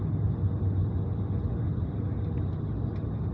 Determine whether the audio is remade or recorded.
recorded